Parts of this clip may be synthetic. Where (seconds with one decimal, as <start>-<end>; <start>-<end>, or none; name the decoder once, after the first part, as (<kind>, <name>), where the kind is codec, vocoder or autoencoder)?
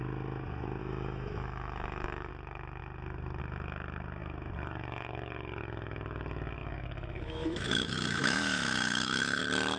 0.8-2.3 (autoencoder, DAC-VAE); 6.6-9.4